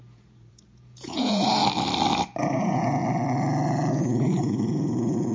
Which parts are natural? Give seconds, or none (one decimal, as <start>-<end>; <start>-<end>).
1.6-2.4; 3.0-3.9